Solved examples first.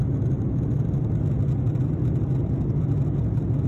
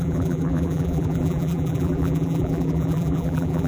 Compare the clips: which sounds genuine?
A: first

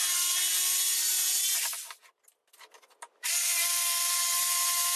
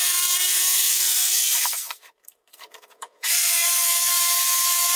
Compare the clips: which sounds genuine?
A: first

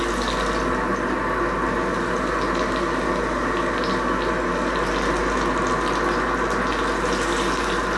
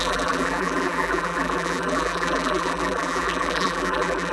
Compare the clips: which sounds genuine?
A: first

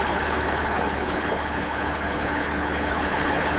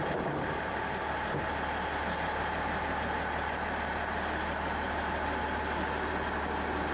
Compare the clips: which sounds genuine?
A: second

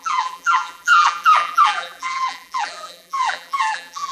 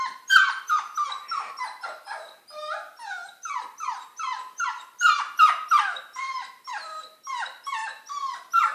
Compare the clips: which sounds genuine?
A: second